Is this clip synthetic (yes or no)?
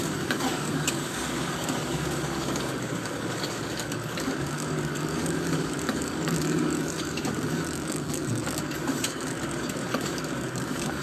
yes